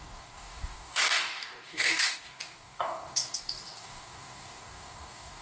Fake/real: fake